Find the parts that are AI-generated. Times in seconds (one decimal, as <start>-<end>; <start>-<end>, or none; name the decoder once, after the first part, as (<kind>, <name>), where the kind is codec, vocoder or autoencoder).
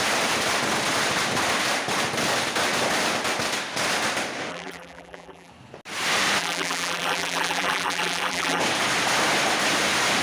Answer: 4.5-5.5 (vocoder, BigVGAN v2); 6.4-8.6